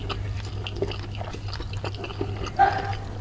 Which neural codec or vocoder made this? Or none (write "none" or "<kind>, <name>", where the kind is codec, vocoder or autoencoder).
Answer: none